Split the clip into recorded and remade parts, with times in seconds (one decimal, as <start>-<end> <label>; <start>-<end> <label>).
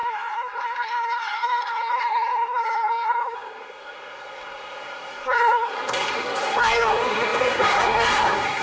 0.0-8.6 remade